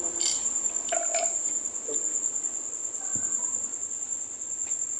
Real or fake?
real